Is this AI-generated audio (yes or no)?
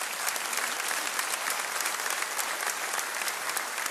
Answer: no